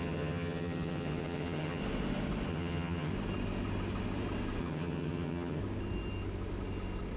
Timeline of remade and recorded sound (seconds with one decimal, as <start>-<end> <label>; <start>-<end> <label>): 0.0-1.8 remade; 1.8-2.5 recorded; 2.5-3.1 remade; 3.1-4.6 recorded; 4.6-5.6 remade; 5.6-7.2 recorded